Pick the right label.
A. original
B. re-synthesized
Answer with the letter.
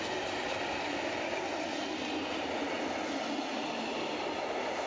A